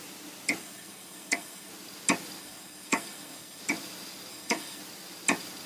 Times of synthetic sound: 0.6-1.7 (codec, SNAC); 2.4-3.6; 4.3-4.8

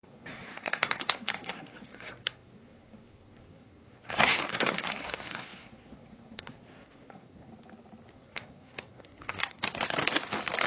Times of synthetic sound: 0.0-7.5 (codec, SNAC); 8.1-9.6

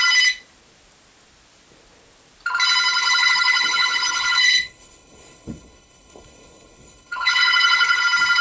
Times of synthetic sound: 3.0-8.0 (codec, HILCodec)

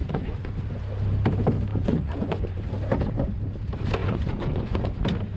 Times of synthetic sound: 0.0-0.6 (vocoder, Vocos); 1.7-2.7; 4.0-5.0

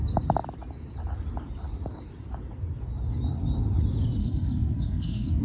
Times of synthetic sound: 4.2-5.4 (codec, SNAC)

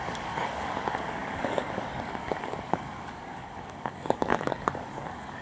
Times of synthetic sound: 0.0-5.4 (codec, DAC)

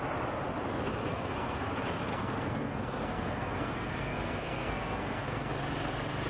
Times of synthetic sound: 1.1-1.7 (codec, SNAC); 2.1-5.5

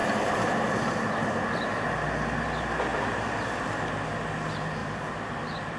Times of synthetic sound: 0.0-1.1 (vocoder, BigVGAN v2); 2.9-3.4; 4.8-5.8